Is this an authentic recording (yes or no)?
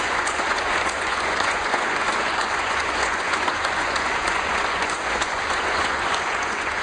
no